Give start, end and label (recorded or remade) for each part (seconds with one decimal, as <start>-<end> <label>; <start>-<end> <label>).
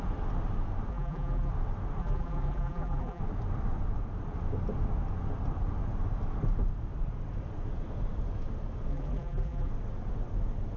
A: 0.0-0.9 recorded; 0.9-1.5 remade; 1.5-2.0 recorded; 2.0-3.2 remade; 3.2-8.9 recorded; 8.9-9.7 remade; 9.7-10.8 recorded